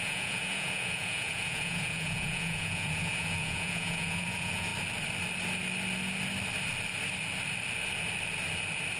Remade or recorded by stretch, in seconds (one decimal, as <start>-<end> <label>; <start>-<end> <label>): 0.0-4.7 remade; 4.7-9.0 recorded